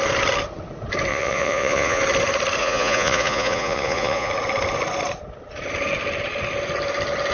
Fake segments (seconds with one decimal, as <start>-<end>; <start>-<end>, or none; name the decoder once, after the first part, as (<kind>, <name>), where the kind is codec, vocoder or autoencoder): 1.1-2.0 (vocoder, Vocos); 2.6-4.3